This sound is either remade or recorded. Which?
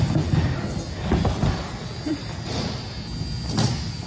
recorded